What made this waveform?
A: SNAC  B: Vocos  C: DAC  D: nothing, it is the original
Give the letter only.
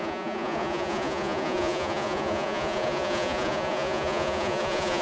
B